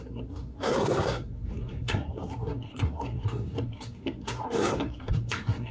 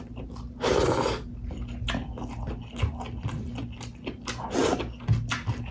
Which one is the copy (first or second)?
first